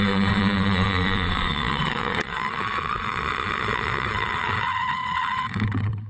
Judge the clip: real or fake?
fake